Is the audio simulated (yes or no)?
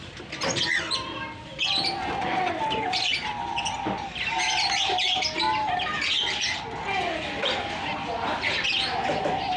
no